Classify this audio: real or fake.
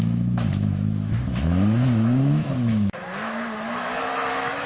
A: fake